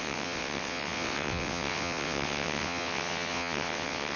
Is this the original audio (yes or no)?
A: no